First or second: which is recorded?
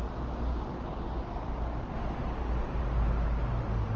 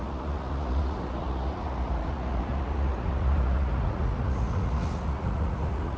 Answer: first